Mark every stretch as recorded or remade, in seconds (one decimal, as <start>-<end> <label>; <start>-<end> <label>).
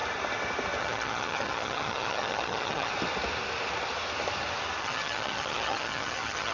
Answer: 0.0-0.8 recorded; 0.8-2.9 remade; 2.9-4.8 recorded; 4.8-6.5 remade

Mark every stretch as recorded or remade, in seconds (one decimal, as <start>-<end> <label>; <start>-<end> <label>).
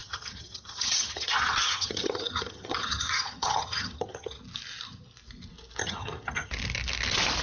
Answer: 0.0-4.4 remade; 4.4-5.8 recorded; 5.8-6.5 remade; 6.5-7.4 recorded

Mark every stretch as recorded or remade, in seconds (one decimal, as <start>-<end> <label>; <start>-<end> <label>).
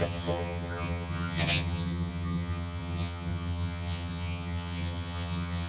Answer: 0.0-5.7 remade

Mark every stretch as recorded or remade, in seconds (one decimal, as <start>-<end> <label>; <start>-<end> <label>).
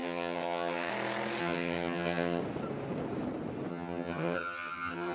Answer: 0.0-0.9 remade; 0.9-1.4 recorded; 1.4-2.4 remade; 2.4-3.7 recorded; 3.7-5.1 remade